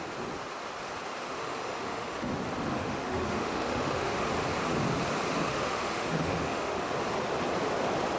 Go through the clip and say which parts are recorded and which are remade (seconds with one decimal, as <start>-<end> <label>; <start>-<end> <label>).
0.0-1.4 recorded; 1.4-2.3 remade; 2.3-2.7 recorded; 2.7-4.3 remade; 4.3-5.4 recorded; 5.4-6.9 remade; 6.9-8.2 recorded